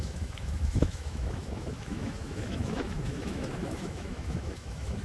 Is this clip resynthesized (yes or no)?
yes